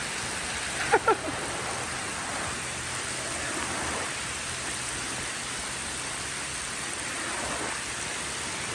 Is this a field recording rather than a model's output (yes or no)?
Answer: yes